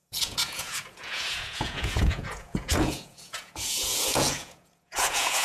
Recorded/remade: remade